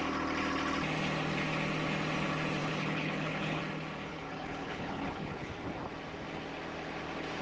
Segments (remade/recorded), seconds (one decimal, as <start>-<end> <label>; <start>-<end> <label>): 0.0-2.6 recorded; 2.6-3.6 remade; 3.6-4.1 recorded; 4.1-5.5 remade; 5.5-7.4 recorded

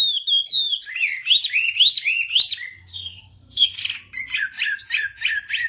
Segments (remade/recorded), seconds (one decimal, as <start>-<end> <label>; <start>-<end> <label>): 0.0-2.9 recorded; 2.9-3.8 remade; 3.8-5.7 recorded